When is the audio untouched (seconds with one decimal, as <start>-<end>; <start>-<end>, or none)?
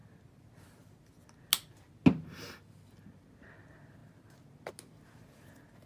0.0-5.9